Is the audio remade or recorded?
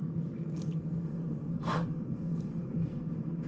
remade